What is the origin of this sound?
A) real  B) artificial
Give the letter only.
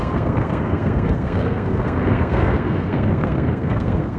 B